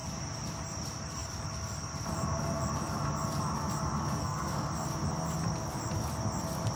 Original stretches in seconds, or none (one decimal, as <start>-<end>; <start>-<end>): 0.0-4.2; 4.7-6.8